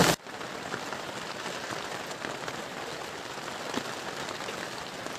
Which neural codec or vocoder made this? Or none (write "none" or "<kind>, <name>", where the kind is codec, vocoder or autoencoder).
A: none